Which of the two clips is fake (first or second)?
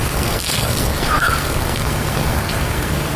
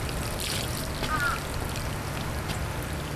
first